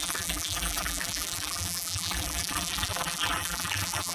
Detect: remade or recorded remade